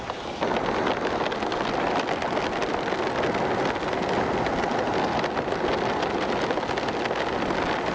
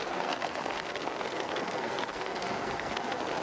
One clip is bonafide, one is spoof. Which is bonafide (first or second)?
first